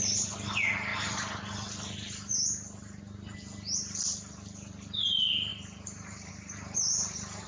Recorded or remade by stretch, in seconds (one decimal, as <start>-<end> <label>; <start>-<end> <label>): 0.0-7.5 recorded